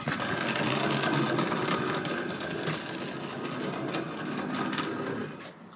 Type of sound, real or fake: real